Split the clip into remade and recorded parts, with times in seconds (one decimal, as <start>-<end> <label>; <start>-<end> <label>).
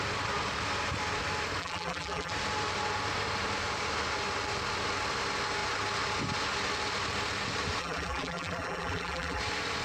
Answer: 0.0-1.6 recorded; 1.6-2.3 remade; 2.3-7.8 recorded; 7.8-9.4 remade; 9.4-9.8 recorded